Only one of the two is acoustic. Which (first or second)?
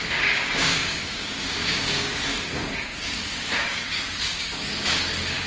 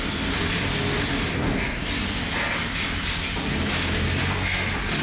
second